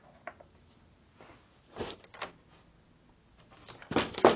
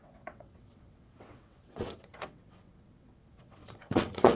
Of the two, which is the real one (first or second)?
first